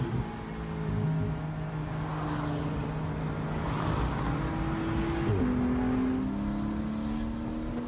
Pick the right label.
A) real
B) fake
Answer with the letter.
A